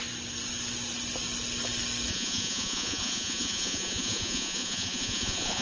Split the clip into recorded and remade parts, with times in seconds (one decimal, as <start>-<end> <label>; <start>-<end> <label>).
0.0-2.1 recorded; 2.1-5.6 remade

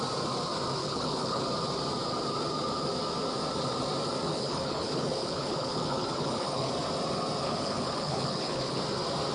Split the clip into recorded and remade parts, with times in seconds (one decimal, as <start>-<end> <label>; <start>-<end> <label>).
0.0-0.8 recorded; 0.8-1.4 remade; 1.4-4.3 recorded; 4.3-6.7 remade; 6.7-7.4 recorded; 7.4-8.8 remade; 8.8-9.3 recorded

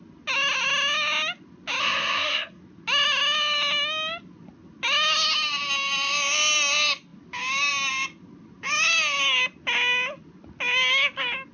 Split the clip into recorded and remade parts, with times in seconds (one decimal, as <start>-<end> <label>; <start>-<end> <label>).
0.0-1.8 recorded; 1.8-2.6 remade; 2.6-11.5 recorded

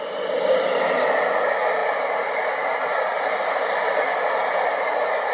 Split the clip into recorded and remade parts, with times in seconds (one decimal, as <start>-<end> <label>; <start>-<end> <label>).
0.0-5.3 recorded

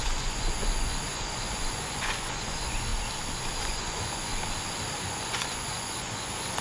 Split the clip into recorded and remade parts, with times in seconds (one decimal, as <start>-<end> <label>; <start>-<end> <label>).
0.0-2.9 remade; 2.9-3.6 recorded; 3.6-4.3 remade; 4.3-5.0 recorded; 5.0-6.6 remade